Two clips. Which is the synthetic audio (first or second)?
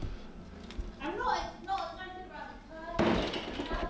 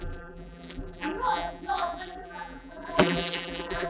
second